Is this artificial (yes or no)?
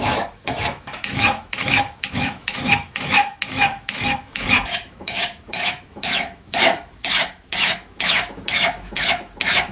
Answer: yes